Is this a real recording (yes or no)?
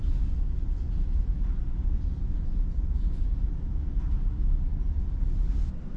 yes